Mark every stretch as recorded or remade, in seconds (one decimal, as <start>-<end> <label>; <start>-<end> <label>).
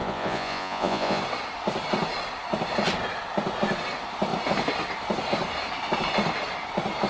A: 0.0-1.2 remade; 1.2-7.1 recorded